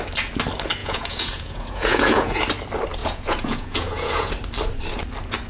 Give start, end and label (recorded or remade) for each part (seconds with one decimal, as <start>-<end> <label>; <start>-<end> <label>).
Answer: 0.0-0.8 recorded; 0.8-2.4 remade; 2.4-3.0 recorded; 3.0-4.3 remade; 4.3-5.5 recorded